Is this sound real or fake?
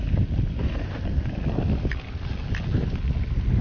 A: real